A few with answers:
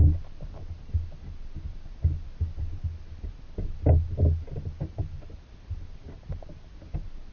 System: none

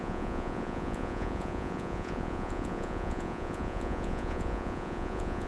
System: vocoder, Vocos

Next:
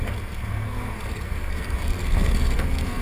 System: codec, SNAC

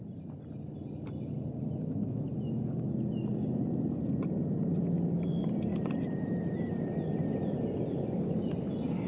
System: none